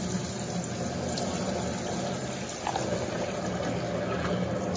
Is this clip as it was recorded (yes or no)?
yes